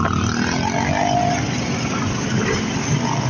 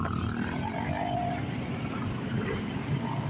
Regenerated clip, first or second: second